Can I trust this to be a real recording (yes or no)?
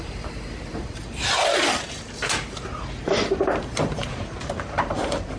no